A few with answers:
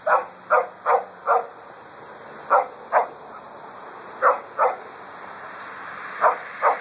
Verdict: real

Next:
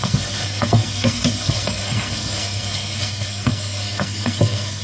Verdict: fake